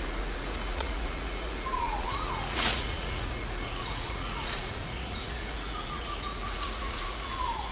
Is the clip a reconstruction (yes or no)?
yes